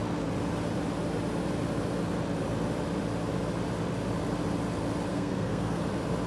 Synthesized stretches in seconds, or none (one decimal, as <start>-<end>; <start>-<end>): 5.1-5.8